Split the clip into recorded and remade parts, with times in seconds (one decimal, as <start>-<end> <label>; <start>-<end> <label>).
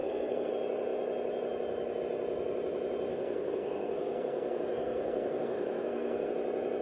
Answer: 0.0-0.5 remade; 0.5-3.1 recorded; 3.1-6.3 remade; 6.3-6.8 recorded